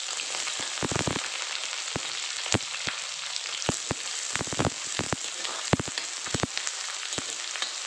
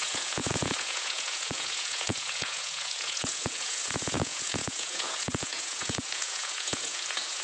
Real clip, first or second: first